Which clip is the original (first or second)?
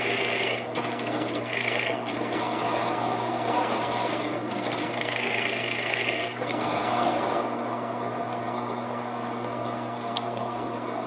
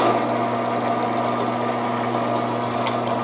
second